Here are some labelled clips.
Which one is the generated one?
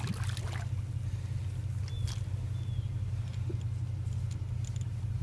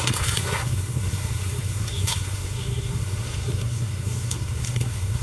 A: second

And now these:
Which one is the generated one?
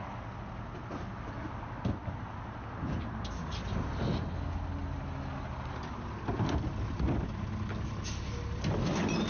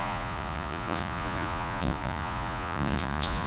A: second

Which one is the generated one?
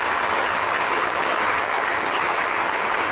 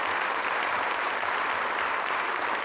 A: first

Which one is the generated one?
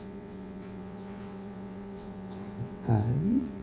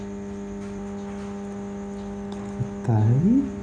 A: first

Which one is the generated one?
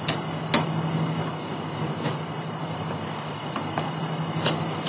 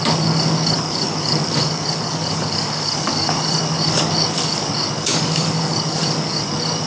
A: second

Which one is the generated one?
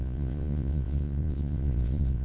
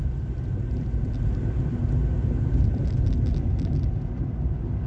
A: first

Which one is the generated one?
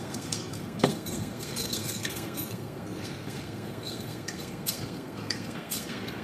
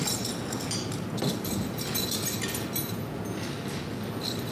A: first